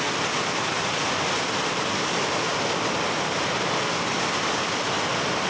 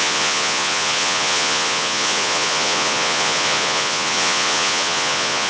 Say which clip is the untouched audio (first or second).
first